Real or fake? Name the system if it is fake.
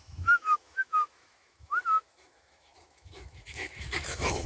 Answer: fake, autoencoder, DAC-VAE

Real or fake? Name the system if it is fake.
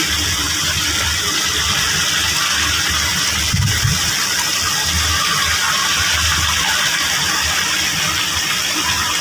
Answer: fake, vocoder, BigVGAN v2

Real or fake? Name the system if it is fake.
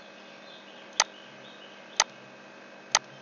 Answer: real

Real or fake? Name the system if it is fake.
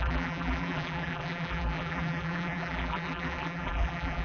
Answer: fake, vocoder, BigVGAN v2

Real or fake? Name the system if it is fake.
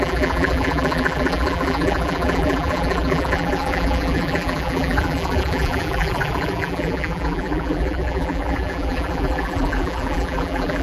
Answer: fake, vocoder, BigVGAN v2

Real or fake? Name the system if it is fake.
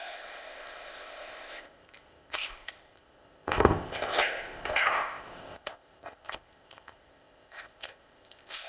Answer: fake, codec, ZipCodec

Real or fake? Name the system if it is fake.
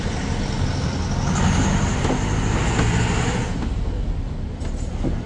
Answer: real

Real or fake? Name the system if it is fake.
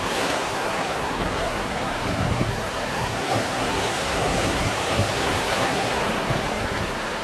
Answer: fake, codec, SNAC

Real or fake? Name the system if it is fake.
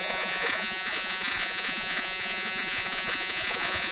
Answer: fake, vocoder, Vocos